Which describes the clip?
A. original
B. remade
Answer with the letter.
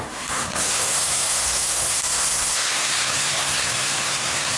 B